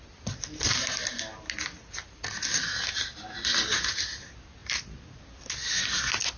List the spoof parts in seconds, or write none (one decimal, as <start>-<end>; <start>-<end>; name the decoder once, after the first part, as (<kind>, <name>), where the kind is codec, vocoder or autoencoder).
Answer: none